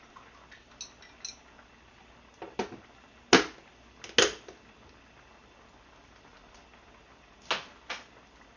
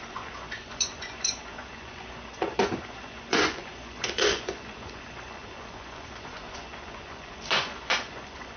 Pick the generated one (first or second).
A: second